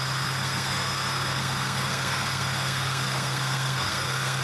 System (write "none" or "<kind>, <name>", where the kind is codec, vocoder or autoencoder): codec, SNAC